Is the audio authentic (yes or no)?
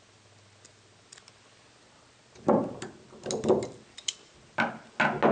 yes